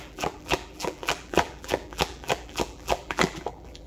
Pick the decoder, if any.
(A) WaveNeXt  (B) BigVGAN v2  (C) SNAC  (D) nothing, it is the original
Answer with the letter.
B